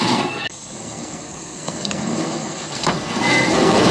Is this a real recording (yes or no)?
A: no